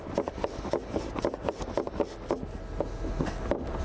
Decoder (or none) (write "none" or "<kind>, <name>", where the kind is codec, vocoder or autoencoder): none